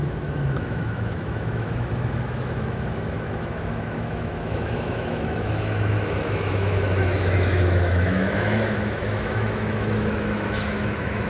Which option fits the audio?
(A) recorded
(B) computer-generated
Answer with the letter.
B